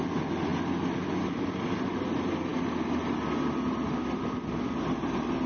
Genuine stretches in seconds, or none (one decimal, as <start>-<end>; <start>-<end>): 0.0-5.5